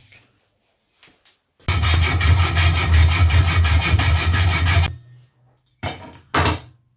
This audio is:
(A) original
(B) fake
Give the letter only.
A